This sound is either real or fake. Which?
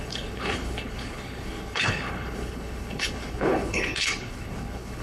fake